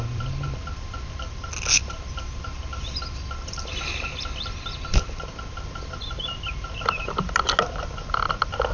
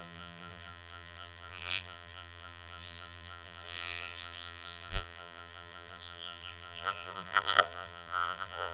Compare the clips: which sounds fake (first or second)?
second